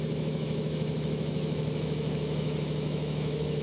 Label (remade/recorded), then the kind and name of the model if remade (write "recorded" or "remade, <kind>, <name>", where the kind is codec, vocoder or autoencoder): remade, autoencoder, DAC-VAE